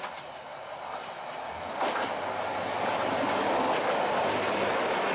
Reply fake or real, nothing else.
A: fake